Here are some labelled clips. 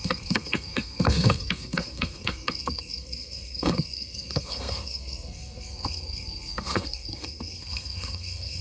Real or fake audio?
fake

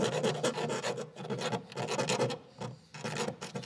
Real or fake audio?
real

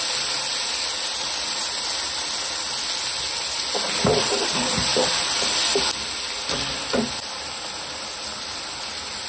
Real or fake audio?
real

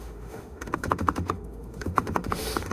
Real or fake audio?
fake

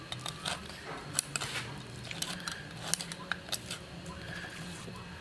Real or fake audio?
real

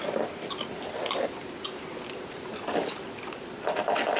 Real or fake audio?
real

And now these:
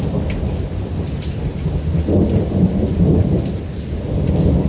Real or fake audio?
real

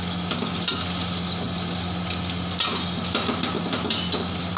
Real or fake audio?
real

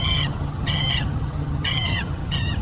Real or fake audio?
fake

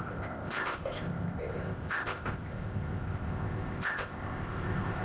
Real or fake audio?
fake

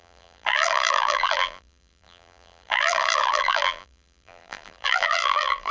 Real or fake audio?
fake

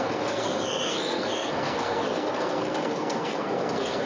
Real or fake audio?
fake